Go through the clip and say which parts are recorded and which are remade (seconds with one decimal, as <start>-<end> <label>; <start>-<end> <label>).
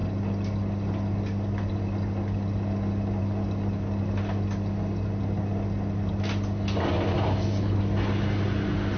0.0-9.0 recorded